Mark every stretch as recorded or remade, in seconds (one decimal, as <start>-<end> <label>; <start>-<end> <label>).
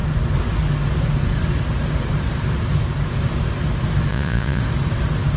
0.0-4.1 recorded; 4.1-4.6 remade; 4.6-5.4 recorded